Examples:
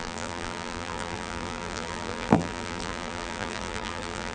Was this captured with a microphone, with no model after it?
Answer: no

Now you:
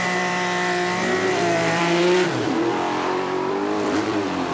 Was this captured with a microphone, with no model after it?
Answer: no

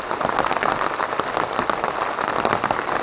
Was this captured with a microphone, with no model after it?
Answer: yes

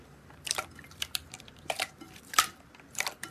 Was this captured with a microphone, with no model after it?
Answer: no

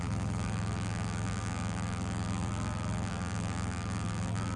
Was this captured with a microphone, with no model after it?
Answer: no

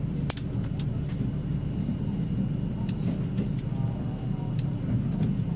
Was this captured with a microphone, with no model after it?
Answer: yes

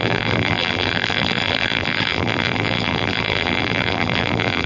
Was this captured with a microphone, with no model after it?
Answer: no